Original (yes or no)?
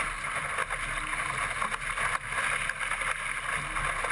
yes